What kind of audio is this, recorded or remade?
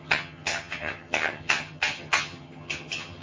remade